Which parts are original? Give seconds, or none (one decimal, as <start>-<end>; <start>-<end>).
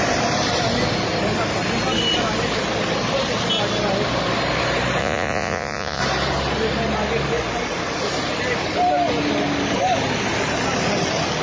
0.0-5.0; 6.0-11.4